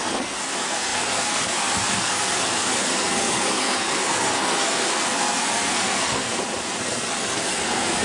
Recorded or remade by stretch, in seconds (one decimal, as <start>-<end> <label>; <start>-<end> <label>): 0.0-6.3 remade; 6.3-6.8 recorded; 6.8-8.0 remade